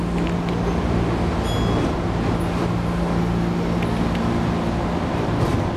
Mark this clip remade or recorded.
recorded